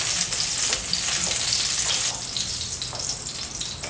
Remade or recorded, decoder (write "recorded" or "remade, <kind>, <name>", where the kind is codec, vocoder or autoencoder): recorded